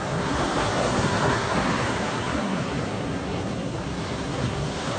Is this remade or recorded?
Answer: remade